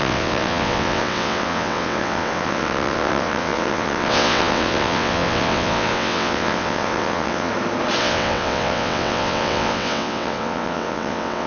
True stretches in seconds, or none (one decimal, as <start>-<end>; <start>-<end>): 7.5-8.0